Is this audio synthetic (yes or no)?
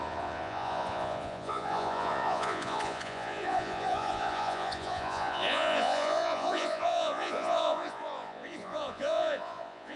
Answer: yes